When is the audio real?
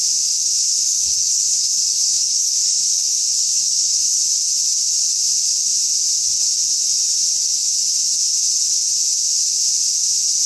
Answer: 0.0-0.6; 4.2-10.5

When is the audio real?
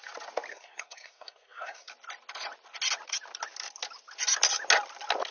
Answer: 0.0-0.5; 1.9-5.3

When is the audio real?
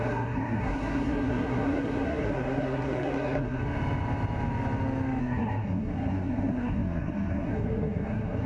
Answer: 3.6-5.2